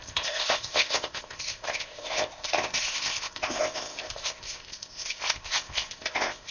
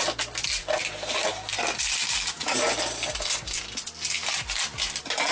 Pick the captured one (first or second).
second